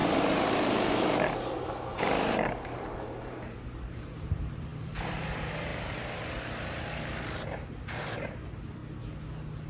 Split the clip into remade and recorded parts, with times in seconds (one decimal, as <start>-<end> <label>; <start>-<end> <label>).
0.0-8.8 remade; 8.8-9.7 recorded